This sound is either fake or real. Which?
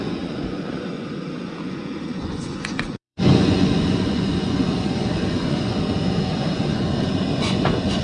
fake